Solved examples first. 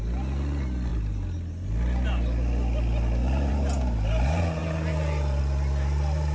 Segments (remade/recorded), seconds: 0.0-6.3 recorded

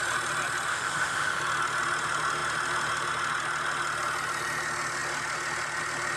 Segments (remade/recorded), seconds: 0.0-0.7 recorded; 0.7-1.4 remade; 1.4-6.2 recorded

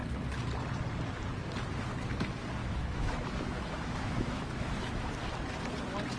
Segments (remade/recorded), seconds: 0.0-2.6 recorded; 2.6-5.1 remade; 5.1-6.2 recorded